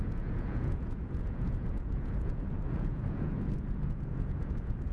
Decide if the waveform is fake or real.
fake